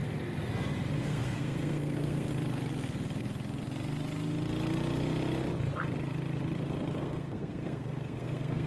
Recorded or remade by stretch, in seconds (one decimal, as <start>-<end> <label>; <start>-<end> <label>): 0.0-1.0 recorded; 1.0-2.3 remade; 2.3-7.0 recorded; 7.0-8.7 remade